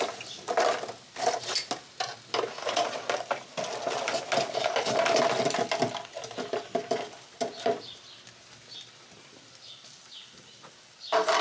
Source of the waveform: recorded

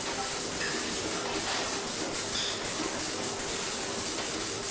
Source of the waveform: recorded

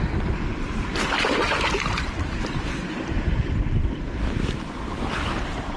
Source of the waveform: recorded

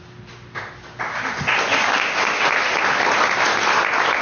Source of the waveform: recorded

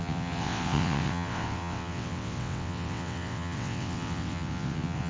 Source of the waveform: remade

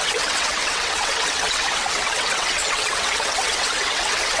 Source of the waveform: remade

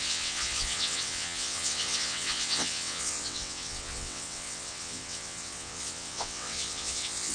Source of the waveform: remade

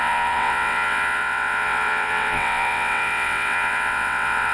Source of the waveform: remade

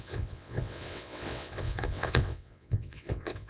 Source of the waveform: remade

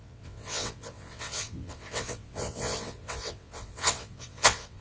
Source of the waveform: remade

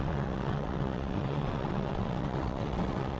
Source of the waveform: remade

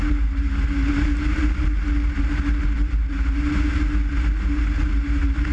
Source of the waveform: recorded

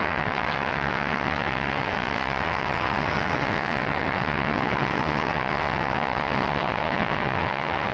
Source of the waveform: remade